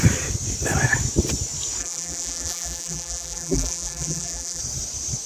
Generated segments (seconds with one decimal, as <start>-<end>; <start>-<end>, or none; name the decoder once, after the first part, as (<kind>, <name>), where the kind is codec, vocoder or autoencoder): 1.8-4.6 (vocoder, BigVGAN v2)